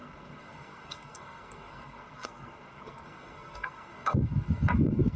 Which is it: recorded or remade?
remade